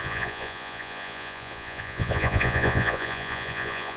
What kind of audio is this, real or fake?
fake